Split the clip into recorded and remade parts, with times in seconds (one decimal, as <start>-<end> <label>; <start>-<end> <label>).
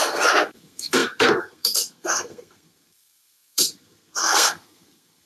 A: 0.0-5.3 remade